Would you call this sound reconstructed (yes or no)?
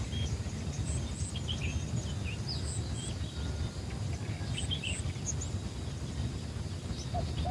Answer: no